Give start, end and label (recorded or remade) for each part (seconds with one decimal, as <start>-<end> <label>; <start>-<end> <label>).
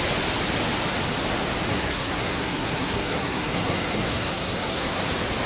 0.0-1.7 recorded; 1.7-5.0 remade; 5.0-5.5 recorded